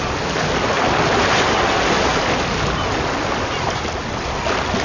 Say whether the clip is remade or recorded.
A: recorded